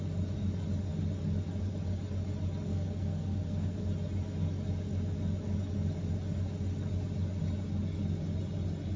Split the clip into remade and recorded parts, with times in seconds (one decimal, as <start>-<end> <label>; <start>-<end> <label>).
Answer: 0.0-2.7 recorded; 2.7-3.8 remade; 3.8-9.0 recorded